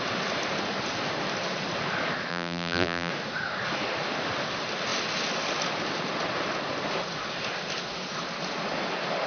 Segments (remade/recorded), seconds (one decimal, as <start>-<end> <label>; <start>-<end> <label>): 0.0-2.3 recorded; 2.3-3.1 remade; 3.1-9.3 recorded